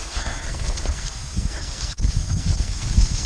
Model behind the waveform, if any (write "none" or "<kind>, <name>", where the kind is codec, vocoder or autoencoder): codec, SNAC